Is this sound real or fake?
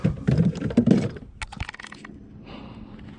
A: real